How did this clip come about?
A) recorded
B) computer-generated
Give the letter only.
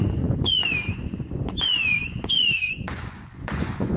B